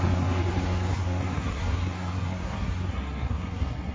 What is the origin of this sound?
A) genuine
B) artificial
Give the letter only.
B